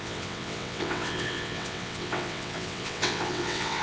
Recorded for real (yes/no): no